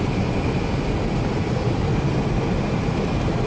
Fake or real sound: fake